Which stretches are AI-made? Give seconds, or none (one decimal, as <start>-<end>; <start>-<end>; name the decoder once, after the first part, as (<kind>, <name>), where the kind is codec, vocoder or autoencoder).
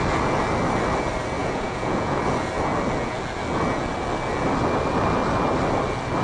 1.4-2.2 (vocoder, Vocos)